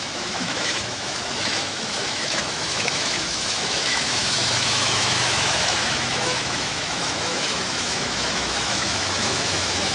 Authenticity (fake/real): fake